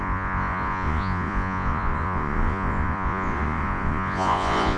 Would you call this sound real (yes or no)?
no